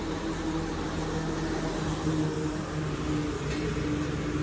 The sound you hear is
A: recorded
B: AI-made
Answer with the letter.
A